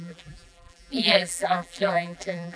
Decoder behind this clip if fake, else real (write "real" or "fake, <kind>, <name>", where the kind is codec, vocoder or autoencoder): fake, vocoder, BigVGAN v2